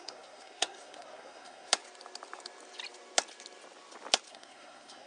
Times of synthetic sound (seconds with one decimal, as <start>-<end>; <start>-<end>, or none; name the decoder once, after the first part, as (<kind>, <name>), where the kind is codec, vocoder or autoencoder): 0.0-1.7 (codec, SNAC); 4.3-5.1